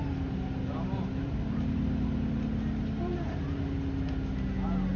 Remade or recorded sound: recorded